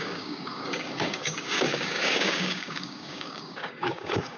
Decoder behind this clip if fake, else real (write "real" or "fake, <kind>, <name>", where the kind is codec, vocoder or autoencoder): fake, codec, DAC